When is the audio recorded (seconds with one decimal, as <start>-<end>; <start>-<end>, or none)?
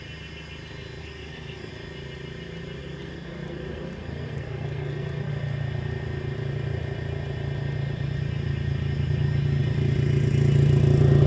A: 0.0-1.0; 1.7-2.8; 5.3-11.3